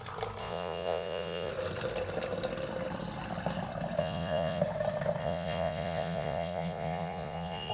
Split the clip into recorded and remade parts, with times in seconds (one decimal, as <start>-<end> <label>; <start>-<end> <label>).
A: 0.0-0.4 recorded; 0.4-1.5 remade; 1.5-4.0 recorded; 4.0-4.6 remade; 4.6-5.2 recorded; 5.2-7.7 remade